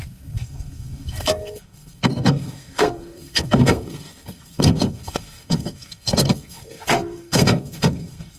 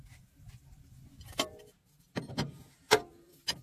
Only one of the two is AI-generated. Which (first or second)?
first